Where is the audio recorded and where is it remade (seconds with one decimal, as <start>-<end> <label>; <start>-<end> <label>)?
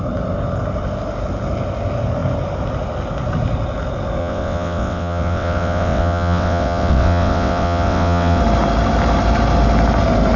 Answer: 0.0-4.2 recorded; 4.2-8.4 remade; 8.4-10.4 recorded